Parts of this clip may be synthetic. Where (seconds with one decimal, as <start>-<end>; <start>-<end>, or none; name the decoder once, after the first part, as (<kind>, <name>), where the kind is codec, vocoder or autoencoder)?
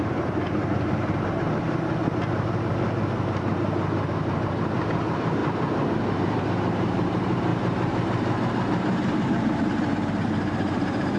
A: 0.0-11.2 (vocoder, BigVGAN v2)